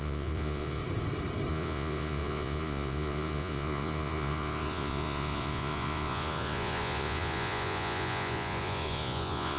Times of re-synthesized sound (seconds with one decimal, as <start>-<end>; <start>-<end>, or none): 0.0-0.8; 1.5-9.6